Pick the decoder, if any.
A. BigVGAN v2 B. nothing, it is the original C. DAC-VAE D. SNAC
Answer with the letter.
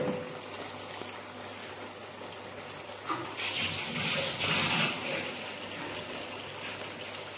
B